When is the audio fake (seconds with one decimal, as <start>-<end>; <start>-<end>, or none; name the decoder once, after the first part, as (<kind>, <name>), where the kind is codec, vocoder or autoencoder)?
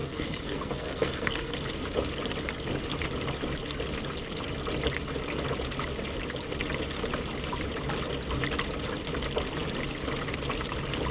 0.0-1.5 (codec, SNAC)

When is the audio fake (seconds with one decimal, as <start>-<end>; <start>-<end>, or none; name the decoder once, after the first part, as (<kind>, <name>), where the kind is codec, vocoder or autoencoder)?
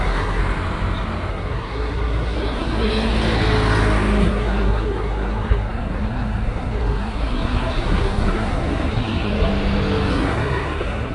0.0-0.4 (codec, SNAC); 1.3-3.1; 4.2-9.5; 10.1-11.1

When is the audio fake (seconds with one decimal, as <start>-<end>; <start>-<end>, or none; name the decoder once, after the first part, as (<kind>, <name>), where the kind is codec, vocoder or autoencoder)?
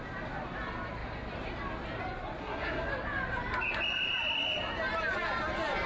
2.4-2.9 (codec, SNAC)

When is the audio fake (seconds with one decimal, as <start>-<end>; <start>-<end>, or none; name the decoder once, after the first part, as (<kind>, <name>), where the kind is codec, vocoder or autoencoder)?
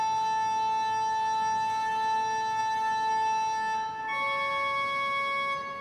none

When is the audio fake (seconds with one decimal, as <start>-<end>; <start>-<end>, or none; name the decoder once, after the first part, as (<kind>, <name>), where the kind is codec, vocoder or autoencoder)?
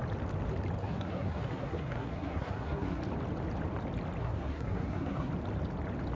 0.8-3.0 (codec, SNAC); 4.2-5.3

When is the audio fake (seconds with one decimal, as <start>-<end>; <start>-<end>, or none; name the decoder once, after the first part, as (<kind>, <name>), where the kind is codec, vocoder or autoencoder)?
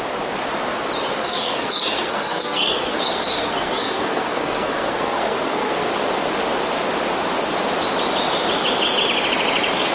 1.2-5.9 (codec, SNAC)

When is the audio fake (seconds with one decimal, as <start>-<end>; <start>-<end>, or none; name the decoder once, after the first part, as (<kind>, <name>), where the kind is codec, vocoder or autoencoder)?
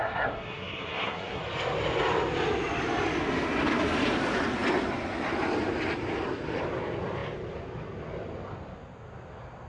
0.0-1.4 (codec, SNAC)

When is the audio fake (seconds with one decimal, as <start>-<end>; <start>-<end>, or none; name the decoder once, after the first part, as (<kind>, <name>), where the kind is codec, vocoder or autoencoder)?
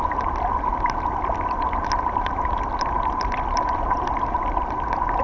none